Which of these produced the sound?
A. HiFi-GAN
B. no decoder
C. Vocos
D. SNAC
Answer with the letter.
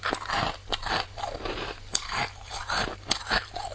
B